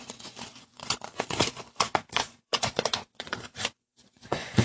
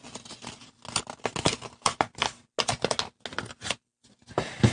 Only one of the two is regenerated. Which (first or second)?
first